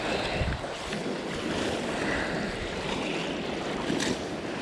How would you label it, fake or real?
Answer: real